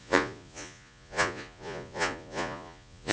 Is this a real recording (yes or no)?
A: no